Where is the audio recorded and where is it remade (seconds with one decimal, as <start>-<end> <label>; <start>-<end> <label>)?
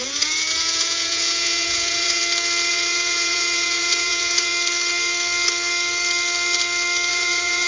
0.0-2.2 remade; 2.2-2.7 recorded; 2.7-4.5 remade; 4.5-7.1 recorded; 7.1-7.7 remade